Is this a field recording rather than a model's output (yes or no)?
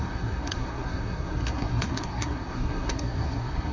no